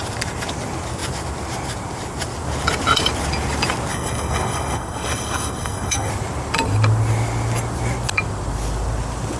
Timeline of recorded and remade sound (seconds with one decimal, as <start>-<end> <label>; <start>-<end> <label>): 0.0-3.9 recorded; 3.9-6.1 remade; 6.1-9.4 recorded